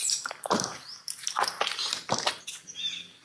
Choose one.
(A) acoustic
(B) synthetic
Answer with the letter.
B